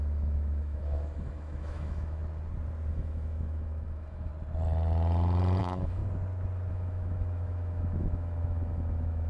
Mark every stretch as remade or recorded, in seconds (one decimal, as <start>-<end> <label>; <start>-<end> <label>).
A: 0.0-2.2 remade; 2.2-2.9 recorded; 2.9-4.3 remade; 4.3-5.6 recorded; 5.6-6.0 remade; 6.0-6.7 recorded; 6.7-9.3 remade